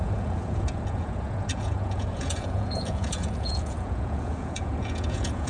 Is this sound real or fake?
fake